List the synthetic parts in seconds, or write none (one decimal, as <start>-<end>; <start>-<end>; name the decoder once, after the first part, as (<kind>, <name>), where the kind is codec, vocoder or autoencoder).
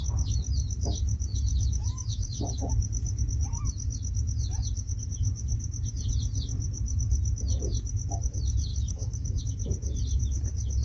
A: 1.3-2.7 (autoencoder, DAC-VAE); 8.7-9.4